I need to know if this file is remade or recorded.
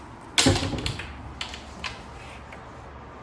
recorded